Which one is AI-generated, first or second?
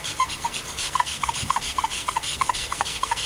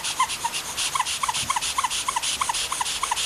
first